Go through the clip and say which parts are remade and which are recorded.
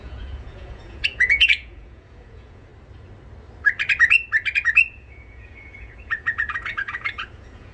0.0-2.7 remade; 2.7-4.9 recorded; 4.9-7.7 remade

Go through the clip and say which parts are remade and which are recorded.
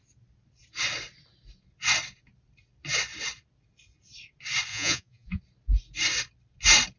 0.0-4.7 recorded; 4.7-5.4 remade; 5.4-7.0 recorded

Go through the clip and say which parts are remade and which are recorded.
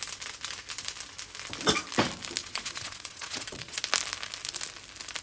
0.0-2.4 recorded; 2.4-3.8 remade; 3.8-5.2 recorded